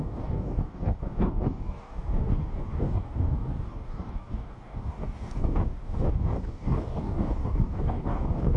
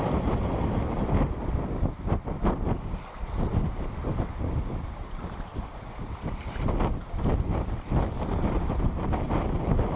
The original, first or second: second